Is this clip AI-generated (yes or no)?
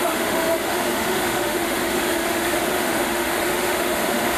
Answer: yes